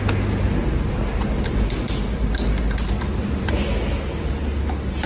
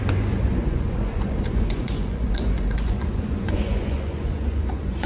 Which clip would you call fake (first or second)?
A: second